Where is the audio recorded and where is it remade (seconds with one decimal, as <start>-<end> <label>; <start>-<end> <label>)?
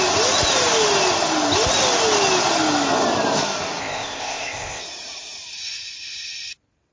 0.0-3.8 recorded; 3.8-4.8 remade; 4.8-6.9 recorded